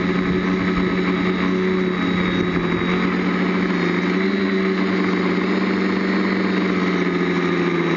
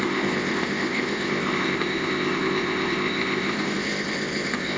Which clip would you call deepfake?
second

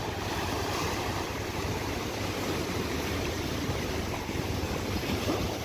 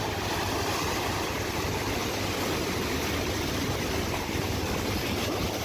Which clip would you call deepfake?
first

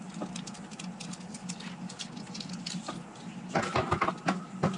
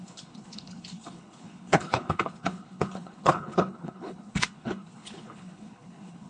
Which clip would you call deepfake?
second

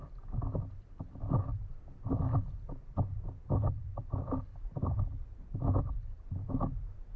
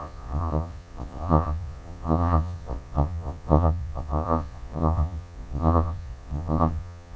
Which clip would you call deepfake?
second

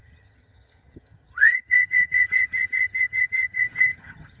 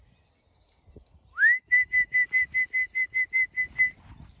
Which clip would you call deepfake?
first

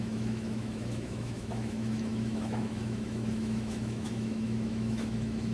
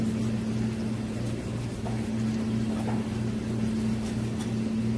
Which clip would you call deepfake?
first